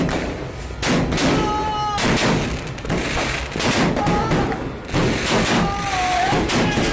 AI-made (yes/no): no